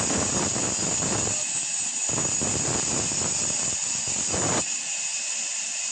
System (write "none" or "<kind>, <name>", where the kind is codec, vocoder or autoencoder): none